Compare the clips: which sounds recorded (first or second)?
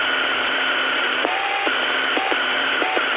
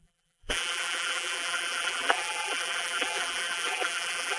first